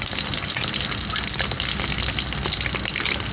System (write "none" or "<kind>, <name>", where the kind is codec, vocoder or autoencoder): none